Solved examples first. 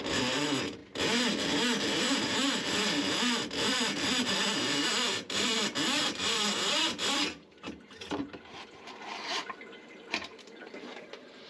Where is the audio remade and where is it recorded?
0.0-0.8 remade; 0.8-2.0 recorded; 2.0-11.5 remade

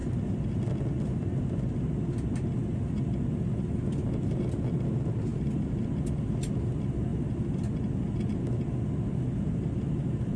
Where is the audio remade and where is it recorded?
0.0-10.4 recorded